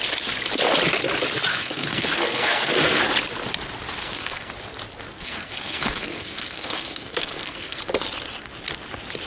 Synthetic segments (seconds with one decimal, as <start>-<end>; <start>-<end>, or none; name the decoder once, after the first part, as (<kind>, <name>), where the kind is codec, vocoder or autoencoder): 1.5-3.0 (codec, SNAC); 4.0-4.5; 5.1-7.8